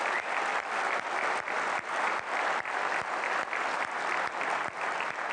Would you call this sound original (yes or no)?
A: yes